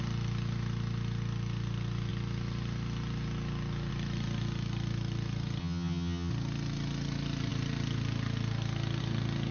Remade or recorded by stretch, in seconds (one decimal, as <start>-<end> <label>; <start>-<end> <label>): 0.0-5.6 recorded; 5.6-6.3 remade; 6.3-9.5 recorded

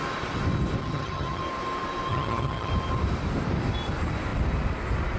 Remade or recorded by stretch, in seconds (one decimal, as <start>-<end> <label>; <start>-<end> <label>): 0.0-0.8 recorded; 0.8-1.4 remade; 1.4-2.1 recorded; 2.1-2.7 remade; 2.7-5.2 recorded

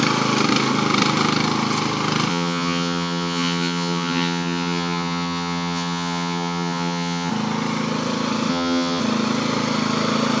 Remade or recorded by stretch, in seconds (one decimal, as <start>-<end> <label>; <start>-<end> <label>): 0.0-2.3 recorded; 2.3-7.3 remade; 7.3-8.5 recorded; 8.5-9.0 remade; 9.0-10.4 recorded

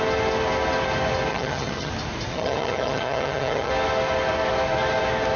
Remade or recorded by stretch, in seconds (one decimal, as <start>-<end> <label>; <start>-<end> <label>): 0.0-1.3 recorded; 1.3-1.9 remade; 1.9-2.3 recorded; 2.3-3.7 remade; 3.7-5.4 recorded